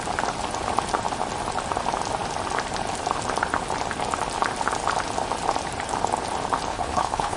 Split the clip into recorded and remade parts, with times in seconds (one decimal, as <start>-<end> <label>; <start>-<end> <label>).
0.0-6.7 recorded; 6.7-7.4 remade